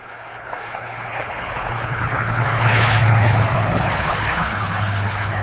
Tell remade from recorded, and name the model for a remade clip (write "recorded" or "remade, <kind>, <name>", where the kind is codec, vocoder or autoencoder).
remade, codec, HILCodec